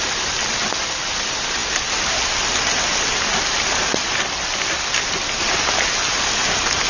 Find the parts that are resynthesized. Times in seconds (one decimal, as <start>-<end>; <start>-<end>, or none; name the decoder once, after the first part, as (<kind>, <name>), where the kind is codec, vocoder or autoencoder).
none